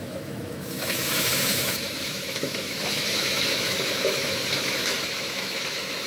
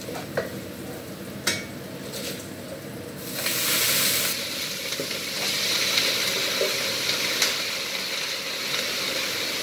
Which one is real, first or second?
second